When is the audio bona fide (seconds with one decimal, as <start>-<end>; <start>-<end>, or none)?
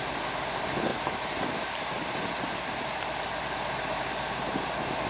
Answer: 0.0-0.9; 3.0-5.1